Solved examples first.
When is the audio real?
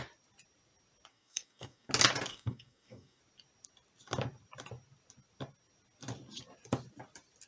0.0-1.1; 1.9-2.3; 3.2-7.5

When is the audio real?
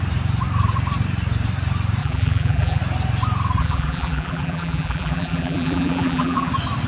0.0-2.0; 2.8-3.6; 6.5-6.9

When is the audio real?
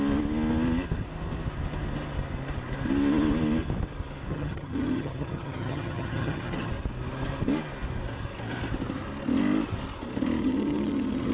0.0-4.3; 6.7-10.4